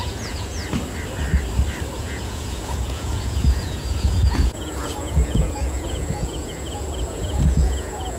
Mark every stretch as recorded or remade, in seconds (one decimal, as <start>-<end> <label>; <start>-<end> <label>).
0.0-0.6 remade; 0.6-2.0 recorded; 2.0-8.2 remade